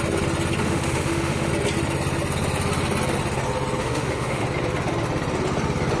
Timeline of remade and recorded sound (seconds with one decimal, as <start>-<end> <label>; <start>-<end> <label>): 0.0-0.6 recorded; 0.6-1.5 remade; 1.5-3.8 recorded; 3.8-4.4 remade; 4.4-6.0 recorded

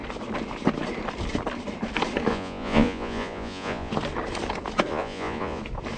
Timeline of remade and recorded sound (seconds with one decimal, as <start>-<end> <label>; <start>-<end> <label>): 0.0-2.3 recorded; 2.3-3.9 remade; 3.9-4.9 recorded; 4.9-5.6 remade; 5.6-6.0 recorded

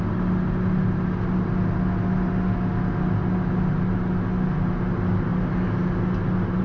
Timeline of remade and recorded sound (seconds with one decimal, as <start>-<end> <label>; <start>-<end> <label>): 0.0-6.6 recorded

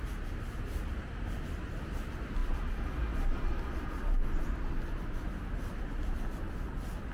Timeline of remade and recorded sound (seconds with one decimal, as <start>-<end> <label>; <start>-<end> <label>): 0.0-7.1 recorded

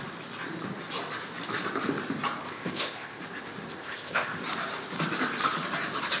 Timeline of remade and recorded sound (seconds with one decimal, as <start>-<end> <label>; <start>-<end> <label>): 0.0-2.4 recorded; 2.4-3.2 remade; 3.2-3.8 recorded; 3.8-4.4 remade; 4.4-6.2 recorded